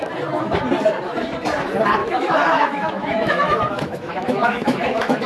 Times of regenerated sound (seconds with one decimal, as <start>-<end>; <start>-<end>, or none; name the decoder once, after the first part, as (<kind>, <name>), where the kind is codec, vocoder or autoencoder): 2.0-5.3 (autoencoder, DAC-VAE)